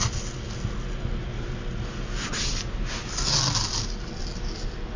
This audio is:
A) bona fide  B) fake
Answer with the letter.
A